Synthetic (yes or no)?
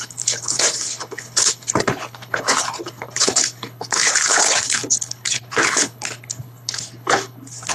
yes